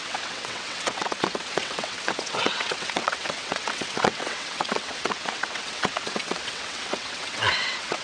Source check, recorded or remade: remade